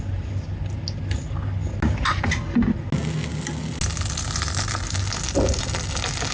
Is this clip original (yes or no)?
yes